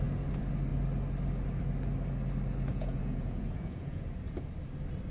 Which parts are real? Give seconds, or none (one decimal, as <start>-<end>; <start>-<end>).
0.0-2.7; 4.1-5.1